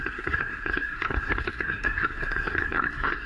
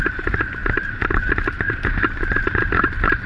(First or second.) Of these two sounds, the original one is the second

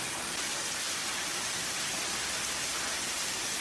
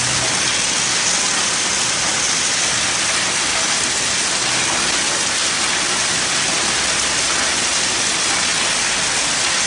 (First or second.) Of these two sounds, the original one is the second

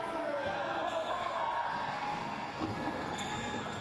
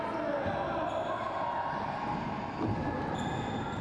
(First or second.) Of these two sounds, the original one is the second